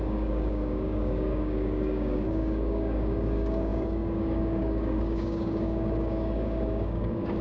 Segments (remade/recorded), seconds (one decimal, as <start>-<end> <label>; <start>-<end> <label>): 0.0-7.4 remade